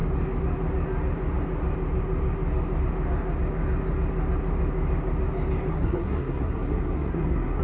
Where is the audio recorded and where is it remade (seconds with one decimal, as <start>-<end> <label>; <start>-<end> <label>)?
0.0-5.7 recorded; 5.7-7.6 remade